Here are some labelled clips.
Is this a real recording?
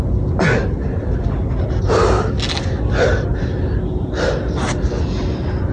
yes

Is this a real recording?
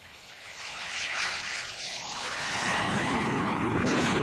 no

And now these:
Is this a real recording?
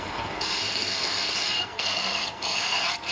no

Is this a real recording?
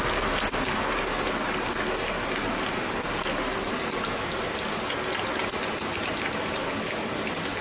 yes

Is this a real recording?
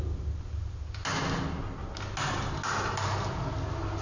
yes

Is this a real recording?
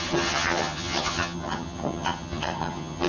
no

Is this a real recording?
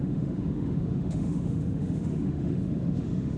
no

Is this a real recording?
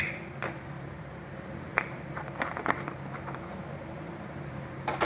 no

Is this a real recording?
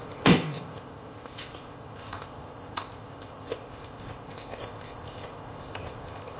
no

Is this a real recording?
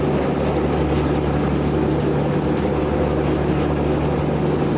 yes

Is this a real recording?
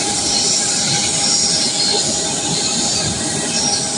no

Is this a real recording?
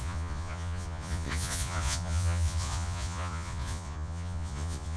no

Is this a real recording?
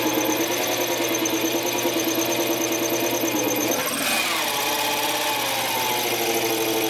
yes